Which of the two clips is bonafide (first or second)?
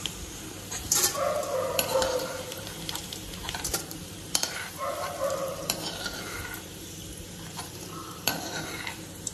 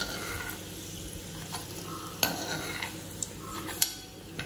second